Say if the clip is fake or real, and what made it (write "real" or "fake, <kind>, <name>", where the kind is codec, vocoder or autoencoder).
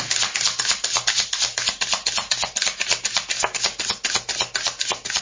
real